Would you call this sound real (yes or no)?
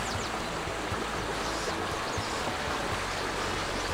yes